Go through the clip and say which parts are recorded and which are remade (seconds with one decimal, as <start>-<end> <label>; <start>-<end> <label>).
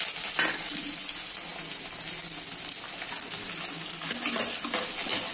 0.0-5.3 recorded